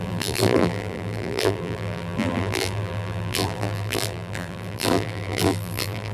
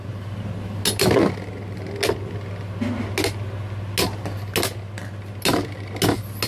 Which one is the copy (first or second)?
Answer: first